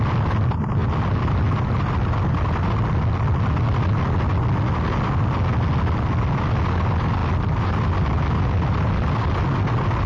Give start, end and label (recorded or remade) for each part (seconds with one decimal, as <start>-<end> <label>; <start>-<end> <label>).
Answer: 0.0-0.8 recorded; 0.8-2.5 remade; 2.5-7.2 recorded; 7.2-9.4 remade; 9.4-10.1 recorded